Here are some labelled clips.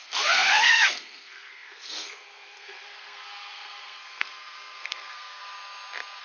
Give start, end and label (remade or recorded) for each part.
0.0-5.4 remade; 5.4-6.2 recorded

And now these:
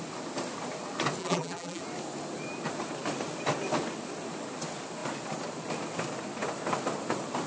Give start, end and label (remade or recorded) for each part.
0.0-1.2 recorded; 1.2-1.8 remade; 1.8-7.5 recorded

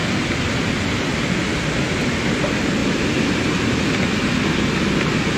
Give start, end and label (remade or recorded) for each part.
0.0-2.2 recorded; 2.2-2.8 remade; 2.8-5.4 recorded

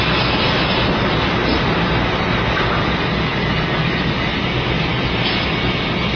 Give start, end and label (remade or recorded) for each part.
0.0-6.2 recorded

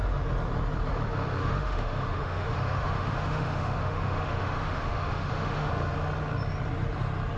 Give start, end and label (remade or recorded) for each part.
0.0-1.4 recorded; 1.4-5.7 remade; 5.7-7.4 recorded

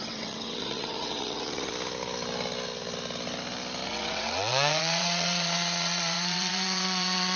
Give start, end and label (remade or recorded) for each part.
0.0-1.7 remade; 1.7-3.9 recorded; 3.9-7.4 remade

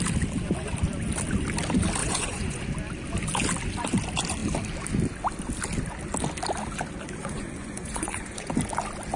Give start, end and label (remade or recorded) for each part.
0.0-2.0 recorded; 2.0-2.6 remade; 2.6-7.2 recorded; 7.2-8.5 remade; 8.5-9.2 recorded